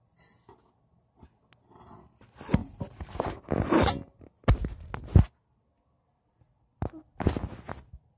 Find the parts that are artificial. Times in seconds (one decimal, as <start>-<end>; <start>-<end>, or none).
none